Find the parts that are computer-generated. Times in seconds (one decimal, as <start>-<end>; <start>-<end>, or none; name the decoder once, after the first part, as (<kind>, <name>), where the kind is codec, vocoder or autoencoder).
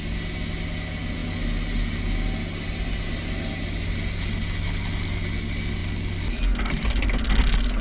none